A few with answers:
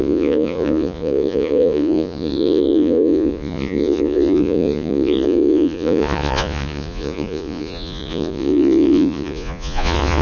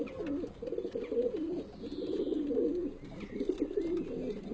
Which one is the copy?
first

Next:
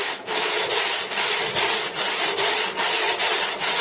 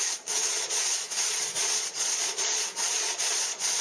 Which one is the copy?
second